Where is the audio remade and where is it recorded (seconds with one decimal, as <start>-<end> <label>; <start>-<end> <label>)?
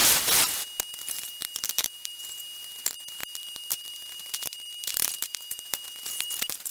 0.0-0.9 recorded; 0.9-6.7 remade